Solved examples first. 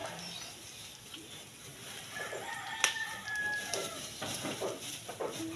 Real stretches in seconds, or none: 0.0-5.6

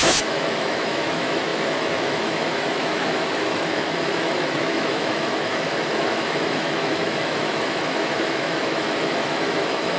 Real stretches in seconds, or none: none

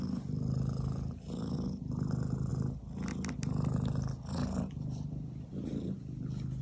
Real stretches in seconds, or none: 0.0-6.6

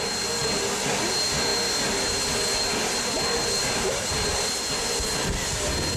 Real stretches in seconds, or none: 0.0-6.0

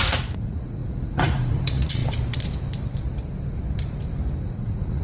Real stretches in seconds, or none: 2.0-4.4

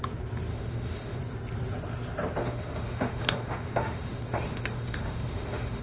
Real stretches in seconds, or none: 0.0-0.5; 1.2-2.4

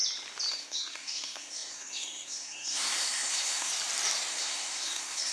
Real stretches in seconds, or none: 0.0-0.5; 3.7-4.3